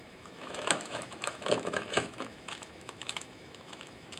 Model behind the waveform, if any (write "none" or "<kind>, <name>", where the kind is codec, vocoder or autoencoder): autoencoder, DAC-VAE